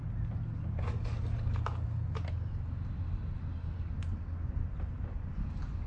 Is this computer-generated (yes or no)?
no